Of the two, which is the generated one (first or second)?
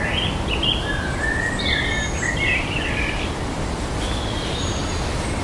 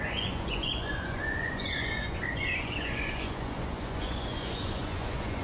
second